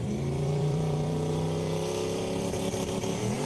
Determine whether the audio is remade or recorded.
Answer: remade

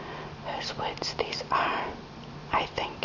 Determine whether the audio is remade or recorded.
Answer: recorded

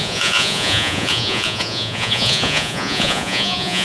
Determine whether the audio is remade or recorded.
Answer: remade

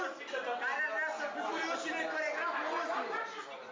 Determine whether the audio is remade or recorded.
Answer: recorded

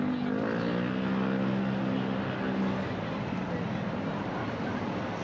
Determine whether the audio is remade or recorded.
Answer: recorded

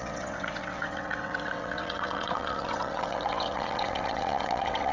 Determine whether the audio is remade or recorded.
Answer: remade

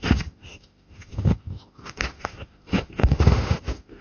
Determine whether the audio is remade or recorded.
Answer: remade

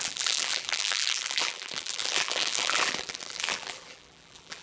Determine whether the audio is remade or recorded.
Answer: remade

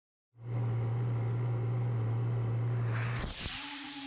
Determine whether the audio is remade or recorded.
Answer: recorded